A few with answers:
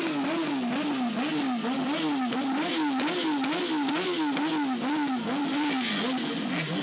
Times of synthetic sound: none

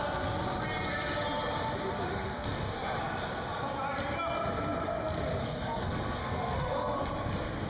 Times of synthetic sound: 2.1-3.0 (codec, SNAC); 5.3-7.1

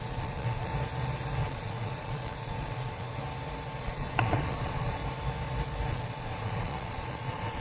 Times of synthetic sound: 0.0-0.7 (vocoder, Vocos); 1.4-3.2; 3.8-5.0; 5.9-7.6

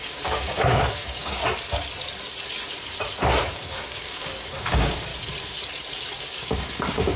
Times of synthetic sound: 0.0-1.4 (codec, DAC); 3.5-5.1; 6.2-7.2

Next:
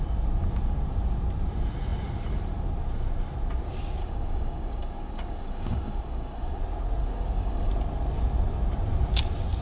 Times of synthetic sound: 4.0-6.6 (codec, DAC); 7.0-7.7